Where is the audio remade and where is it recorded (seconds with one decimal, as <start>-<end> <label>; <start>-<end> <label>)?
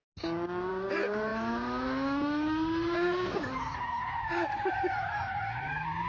0.0-6.1 recorded